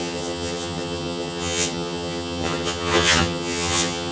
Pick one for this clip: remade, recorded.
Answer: remade